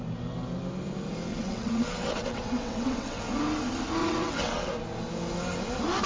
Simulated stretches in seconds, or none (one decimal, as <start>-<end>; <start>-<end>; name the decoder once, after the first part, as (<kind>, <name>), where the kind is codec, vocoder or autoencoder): 1.3-3.2 (vocoder, WaveNeXt); 4.0-4.7

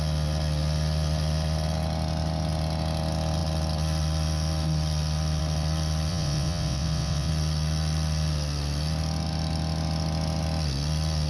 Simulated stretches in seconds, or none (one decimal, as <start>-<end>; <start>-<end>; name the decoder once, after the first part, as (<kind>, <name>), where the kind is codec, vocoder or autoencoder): 6.1-7.3 (vocoder, WaveNeXt)